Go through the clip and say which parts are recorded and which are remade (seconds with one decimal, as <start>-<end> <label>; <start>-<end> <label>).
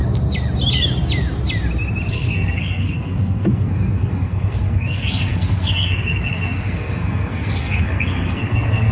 0.0-2.1 recorded; 2.1-8.9 remade